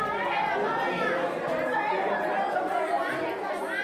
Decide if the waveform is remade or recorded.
recorded